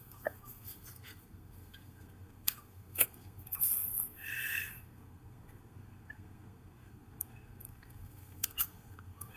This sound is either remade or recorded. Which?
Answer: remade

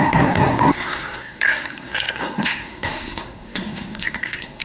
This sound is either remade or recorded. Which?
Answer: remade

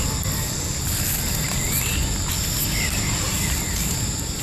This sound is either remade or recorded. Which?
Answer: recorded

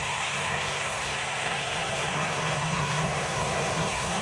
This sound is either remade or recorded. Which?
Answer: remade